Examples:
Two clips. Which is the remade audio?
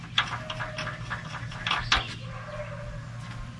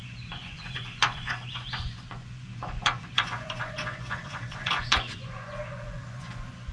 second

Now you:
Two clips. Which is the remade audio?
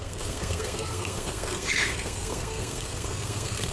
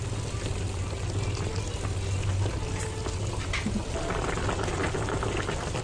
first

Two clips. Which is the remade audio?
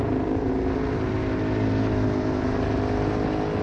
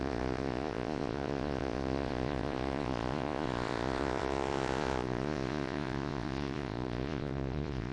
second